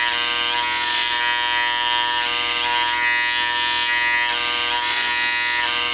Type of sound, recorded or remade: recorded